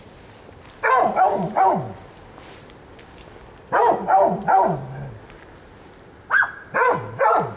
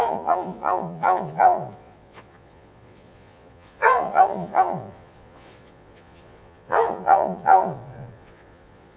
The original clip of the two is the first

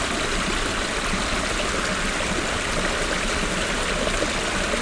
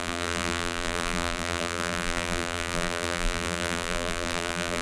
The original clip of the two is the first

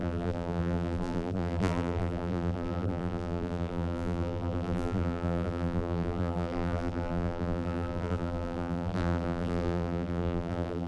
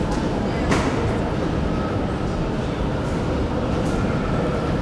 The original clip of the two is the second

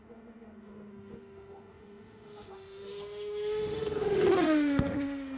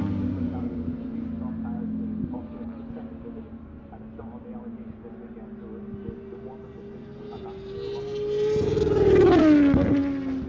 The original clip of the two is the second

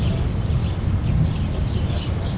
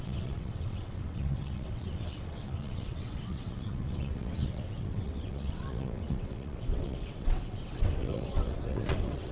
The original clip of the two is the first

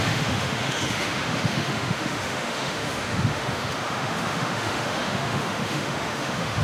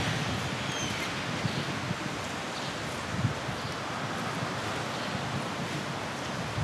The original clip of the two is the second